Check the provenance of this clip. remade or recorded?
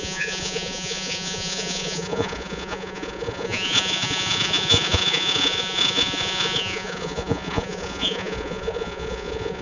remade